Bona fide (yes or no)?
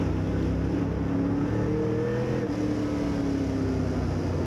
yes